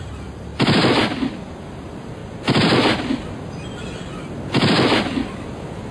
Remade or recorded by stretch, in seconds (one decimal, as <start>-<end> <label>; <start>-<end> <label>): 0.0-0.5 remade; 0.5-1.6 recorded; 1.6-2.2 remade; 2.2-5.9 recorded